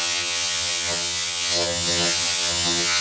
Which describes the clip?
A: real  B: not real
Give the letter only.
B